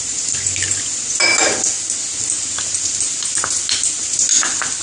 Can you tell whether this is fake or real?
real